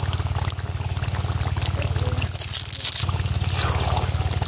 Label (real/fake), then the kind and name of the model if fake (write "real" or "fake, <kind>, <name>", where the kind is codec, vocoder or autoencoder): real